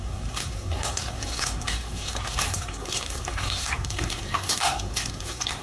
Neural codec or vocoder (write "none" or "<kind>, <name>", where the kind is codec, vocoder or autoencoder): codec, SNAC